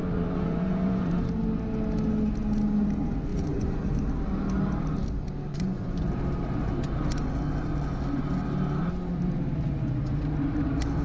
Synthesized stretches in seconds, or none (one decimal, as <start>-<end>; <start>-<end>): 0.0-1.1; 3.3-4.1; 5.5-6.1

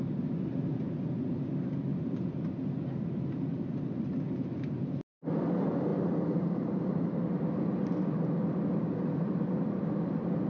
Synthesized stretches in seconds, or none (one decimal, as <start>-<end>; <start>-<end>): 5.9-7.2

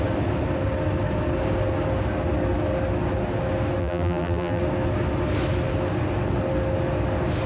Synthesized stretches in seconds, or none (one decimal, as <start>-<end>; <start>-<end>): 3.8-4.6

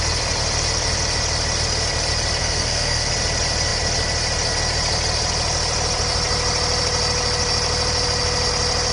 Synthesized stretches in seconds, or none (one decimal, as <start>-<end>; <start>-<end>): 2.4-3.1